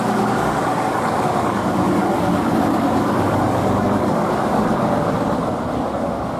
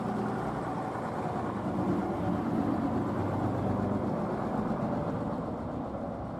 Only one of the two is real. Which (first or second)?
second